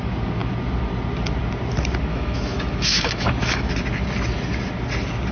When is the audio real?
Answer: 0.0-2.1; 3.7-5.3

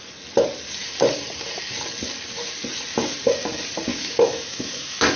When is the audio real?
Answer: 0.0-3.9

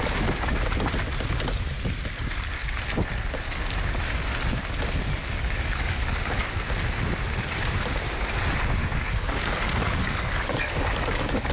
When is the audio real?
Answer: 0.0-5.2; 6.4-8.8

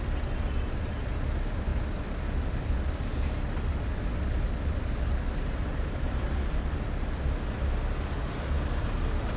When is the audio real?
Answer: 0.0-9.4

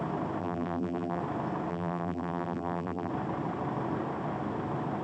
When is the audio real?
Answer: 0.0-0.4; 1.2-1.7; 3.1-5.0

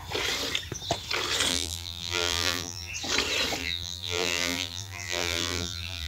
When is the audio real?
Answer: 0.0-1.5; 2.9-3.6

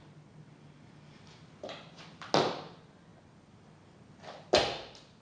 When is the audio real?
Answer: 0.0-5.2

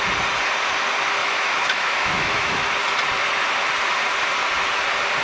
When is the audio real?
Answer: 0.0-1.2; 2.6-5.2